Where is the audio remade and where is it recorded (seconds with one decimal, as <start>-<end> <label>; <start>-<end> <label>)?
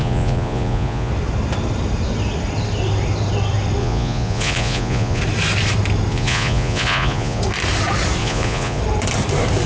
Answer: 0.0-1.1 remade; 1.1-3.8 recorded; 3.8-5.2 remade; 5.2-6.1 recorded; 6.1-7.4 remade; 7.4-8.2 recorded; 8.2-8.8 remade; 8.8-9.7 recorded